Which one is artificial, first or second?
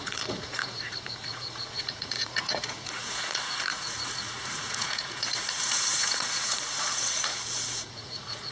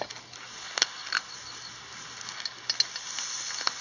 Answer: first